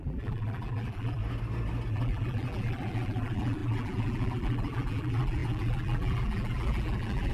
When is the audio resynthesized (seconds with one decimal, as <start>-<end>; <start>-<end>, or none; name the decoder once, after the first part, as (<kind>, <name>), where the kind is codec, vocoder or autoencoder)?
0.0-1.2 (vocoder, BigVGAN v2); 1.9-7.3